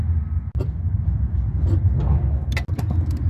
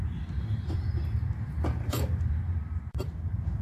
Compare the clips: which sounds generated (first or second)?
second